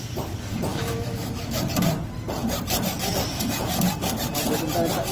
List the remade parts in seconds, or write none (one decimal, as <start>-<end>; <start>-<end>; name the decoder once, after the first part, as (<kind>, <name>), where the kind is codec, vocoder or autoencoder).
0.7-1.7 (autoencoder, DAC-VAE)